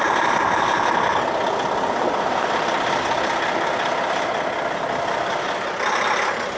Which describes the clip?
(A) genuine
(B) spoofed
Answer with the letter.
A